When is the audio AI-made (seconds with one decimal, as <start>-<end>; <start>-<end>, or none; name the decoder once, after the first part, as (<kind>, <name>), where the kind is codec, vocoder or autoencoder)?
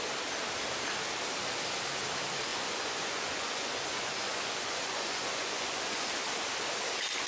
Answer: 2.5-6.1 (vocoder, Vocos)